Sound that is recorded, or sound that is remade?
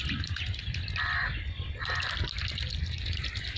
recorded